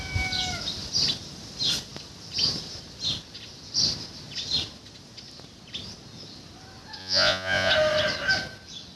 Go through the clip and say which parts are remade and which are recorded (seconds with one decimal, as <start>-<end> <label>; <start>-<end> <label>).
0.0-7.0 recorded; 7.0-7.7 remade; 7.7-9.0 recorded